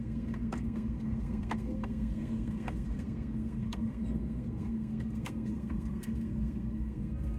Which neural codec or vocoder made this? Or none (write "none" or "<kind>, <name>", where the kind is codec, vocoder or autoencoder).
codec, SNAC